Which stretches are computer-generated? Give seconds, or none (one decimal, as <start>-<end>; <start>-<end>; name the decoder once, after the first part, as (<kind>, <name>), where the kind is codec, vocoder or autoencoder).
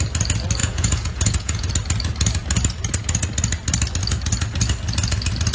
0.6-1.7 (vocoder, Vocos)